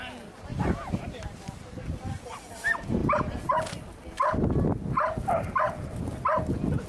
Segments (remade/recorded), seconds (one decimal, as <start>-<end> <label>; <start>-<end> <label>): 0.0-0.5 recorded; 0.5-2.3 remade; 2.3-6.9 recorded